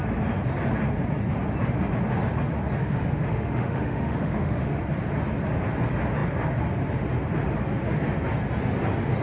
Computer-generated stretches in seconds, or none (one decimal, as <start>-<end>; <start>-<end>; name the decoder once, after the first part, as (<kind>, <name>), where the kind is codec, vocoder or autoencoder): 2.8-4.8 (autoencoder, DAC-VAE)